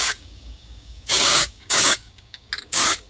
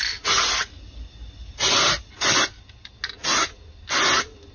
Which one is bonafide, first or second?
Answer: second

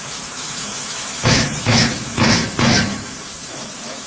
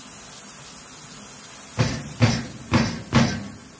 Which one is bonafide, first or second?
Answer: second